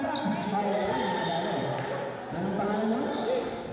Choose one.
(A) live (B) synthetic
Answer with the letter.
A